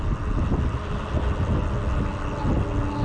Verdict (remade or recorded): recorded